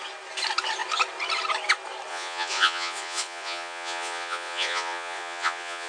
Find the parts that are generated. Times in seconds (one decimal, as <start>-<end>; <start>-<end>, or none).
2.1-5.9